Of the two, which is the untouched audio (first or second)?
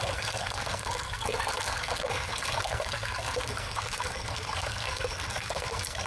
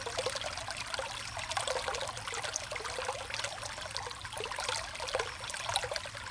second